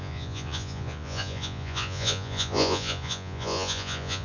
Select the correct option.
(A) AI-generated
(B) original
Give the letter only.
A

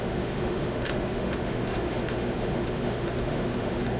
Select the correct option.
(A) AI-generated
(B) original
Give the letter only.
A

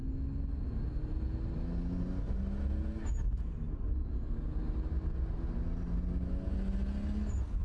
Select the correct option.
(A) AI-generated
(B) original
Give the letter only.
B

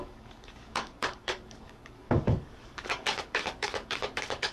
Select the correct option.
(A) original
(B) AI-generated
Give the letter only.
B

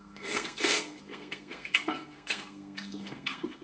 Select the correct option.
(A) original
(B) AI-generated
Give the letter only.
B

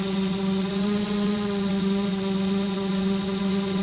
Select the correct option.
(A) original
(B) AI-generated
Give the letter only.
B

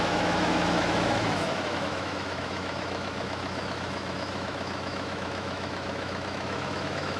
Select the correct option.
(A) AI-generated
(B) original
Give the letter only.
A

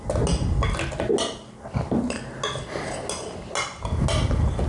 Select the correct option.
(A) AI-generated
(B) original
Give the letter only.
B